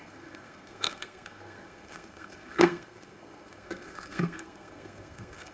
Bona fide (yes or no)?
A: no